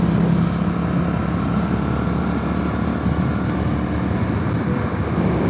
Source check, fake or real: real